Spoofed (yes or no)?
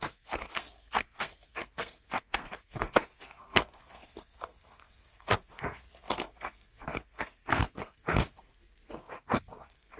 yes